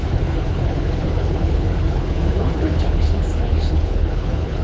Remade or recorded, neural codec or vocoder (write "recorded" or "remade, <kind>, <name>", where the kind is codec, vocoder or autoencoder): remade, codec, HILCodec